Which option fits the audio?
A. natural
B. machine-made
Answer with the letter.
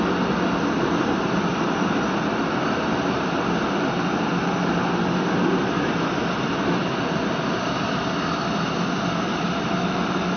A